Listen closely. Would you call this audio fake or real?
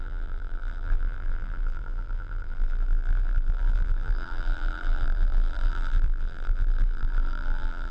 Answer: fake